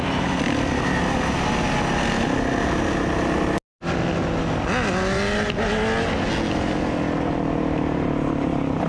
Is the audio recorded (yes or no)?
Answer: yes